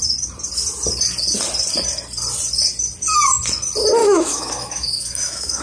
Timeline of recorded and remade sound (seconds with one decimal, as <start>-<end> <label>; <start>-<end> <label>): 0.0-4.0 recorded; 4.0-5.6 remade